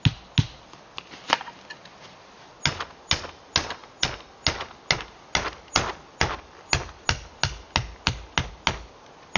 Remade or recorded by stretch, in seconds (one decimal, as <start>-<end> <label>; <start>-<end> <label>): 0.0-9.4 recorded